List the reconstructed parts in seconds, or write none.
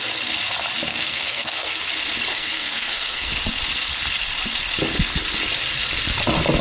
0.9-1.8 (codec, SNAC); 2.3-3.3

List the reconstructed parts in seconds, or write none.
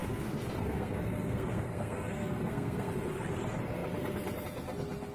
0.0-2.9 (codec, SNAC)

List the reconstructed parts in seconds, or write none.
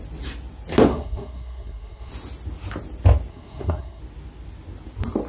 0.9-2.1 (codec, SNAC); 3.3-4.0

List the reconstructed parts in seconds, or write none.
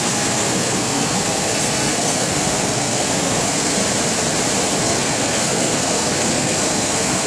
0.0-3.8 (codec, SNAC); 4.8-7.3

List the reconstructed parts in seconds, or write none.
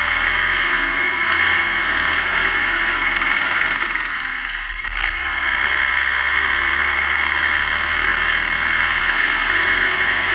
0.0-10.3 (codec, SNAC)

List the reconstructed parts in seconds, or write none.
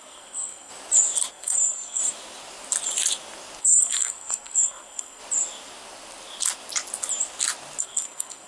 0.0-0.7 (codec, SNAC); 1.3-2.0; 3.6-5.2; 7.8-8.5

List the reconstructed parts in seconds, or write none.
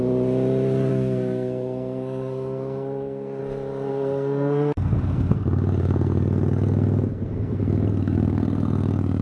0.9-3.4 (codec, SNAC); 3.9-9.2